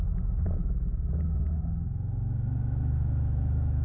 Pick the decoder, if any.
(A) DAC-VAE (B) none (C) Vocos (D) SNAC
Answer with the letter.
A